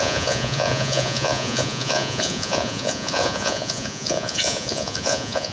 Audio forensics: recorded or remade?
remade